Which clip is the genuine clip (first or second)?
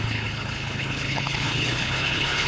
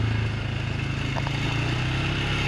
second